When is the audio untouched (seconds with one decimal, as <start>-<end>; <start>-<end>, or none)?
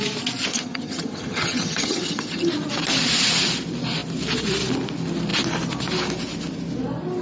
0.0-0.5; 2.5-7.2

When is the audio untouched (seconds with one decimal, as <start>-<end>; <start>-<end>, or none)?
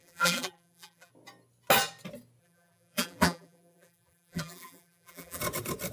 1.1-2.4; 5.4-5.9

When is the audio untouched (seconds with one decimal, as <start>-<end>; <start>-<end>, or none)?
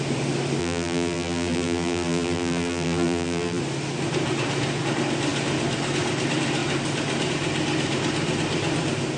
0.0-0.6; 3.6-9.2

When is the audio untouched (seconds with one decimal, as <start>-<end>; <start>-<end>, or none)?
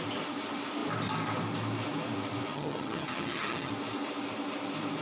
0.0-2.5; 3.7-5.0